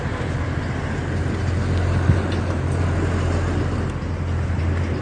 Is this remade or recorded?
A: recorded